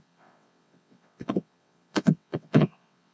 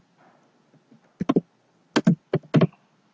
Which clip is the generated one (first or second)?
first